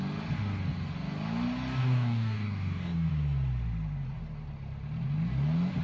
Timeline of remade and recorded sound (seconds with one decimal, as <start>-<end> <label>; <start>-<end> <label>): 0.0-1.8 recorded; 1.8-3.1 remade; 3.1-5.8 recorded

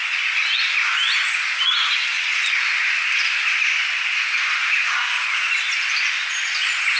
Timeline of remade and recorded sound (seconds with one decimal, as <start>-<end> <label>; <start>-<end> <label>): 0.0-7.0 recorded

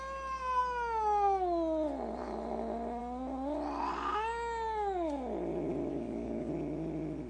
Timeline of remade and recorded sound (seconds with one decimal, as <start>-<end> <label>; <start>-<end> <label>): 0.0-5.9 recorded; 5.9-6.5 remade; 6.5-7.3 recorded

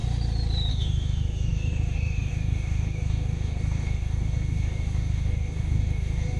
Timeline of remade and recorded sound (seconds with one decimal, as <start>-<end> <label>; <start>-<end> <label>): 0.0-0.7 recorded; 0.7-6.4 remade

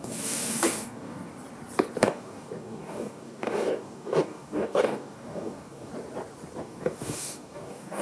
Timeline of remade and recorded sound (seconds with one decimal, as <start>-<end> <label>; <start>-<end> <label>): 0.0-1.3 remade; 1.3-2.0 recorded; 2.0-5.9 remade; 5.9-6.6 recorded; 6.6-8.0 remade

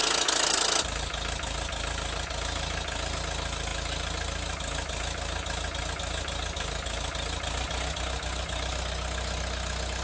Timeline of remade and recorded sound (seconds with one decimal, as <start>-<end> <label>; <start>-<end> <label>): 0.0-10.0 recorded

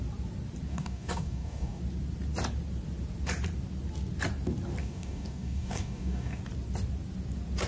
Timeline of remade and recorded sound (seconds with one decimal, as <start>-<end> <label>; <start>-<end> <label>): 0.0-0.7 recorded; 0.7-1.8 remade; 1.8-4.8 recorded; 4.8-6.4 remade; 6.4-7.7 recorded